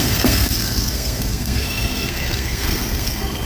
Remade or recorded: remade